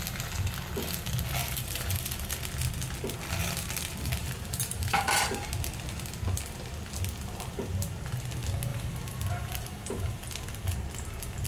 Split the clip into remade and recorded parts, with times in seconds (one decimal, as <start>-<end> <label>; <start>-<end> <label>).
0.0-1.4 recorded; 1.4-2.3 remade; 2.3-4.2 recorded; 4.2-5.1 remade; 5.1-8.7 recorded; 8.7-10.1 remade; 10.1-11.5 recorded